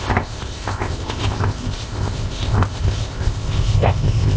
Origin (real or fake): fake